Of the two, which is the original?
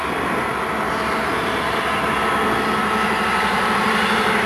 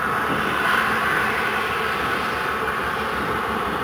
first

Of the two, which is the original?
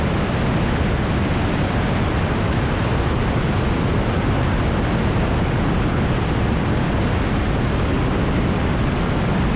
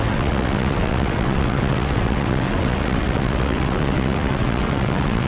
first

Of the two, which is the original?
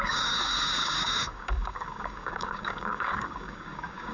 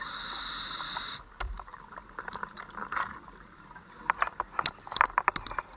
second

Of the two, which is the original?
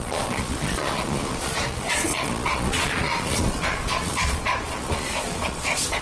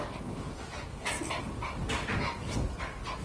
second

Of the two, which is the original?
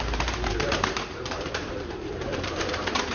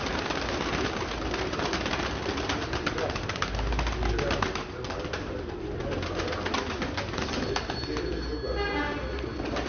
second